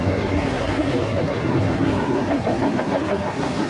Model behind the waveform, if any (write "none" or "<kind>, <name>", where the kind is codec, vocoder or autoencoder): codec, SNAC